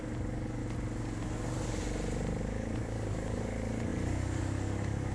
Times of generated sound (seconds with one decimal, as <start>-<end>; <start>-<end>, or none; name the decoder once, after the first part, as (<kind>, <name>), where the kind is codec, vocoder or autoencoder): 0.0-0.6 (codec, DAC); 2.4-5.1